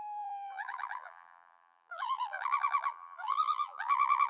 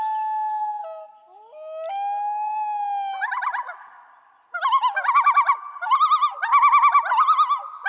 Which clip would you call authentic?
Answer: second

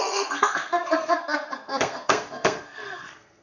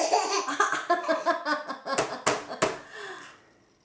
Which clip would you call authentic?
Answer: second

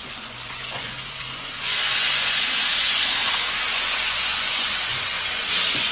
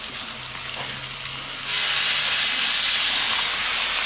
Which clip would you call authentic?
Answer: second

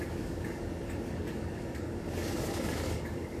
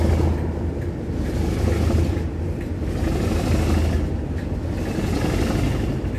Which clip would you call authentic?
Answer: second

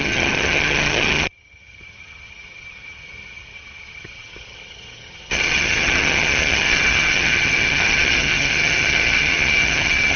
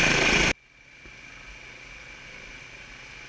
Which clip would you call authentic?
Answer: second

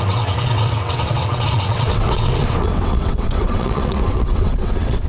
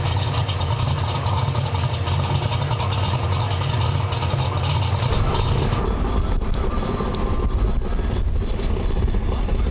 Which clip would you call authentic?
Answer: second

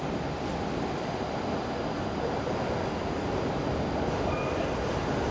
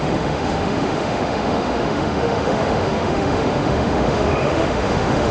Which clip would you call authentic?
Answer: first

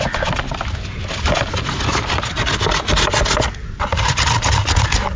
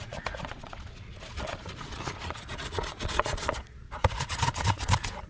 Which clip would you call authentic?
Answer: first